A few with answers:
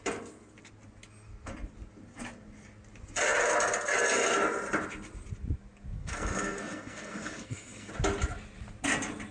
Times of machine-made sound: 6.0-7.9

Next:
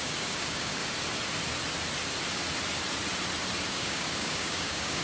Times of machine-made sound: 0.0-0.8; 3.7-5.0

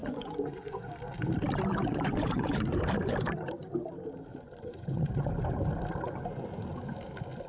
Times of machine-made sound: 0.0-0.9; 1.7-2.8; 4.3-5.3

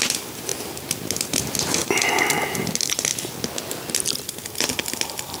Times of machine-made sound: 0.0-0.5; 1.0-1.8; 2.4-3.1; 4.3-5.4